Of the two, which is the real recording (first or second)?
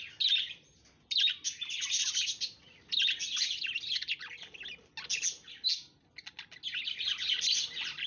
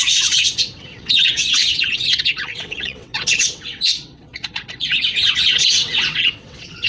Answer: first